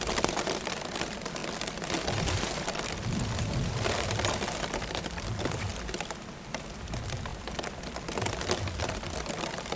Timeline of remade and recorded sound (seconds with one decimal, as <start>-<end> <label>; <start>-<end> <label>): 0.0-1.4 remade; 1.4-3.9 recorded; 3.9-5.7 remade; 5.7-6.8 recorded; 6.8-7.3 remade; 7.3-7.8 recorded; 7.8-9.8 remade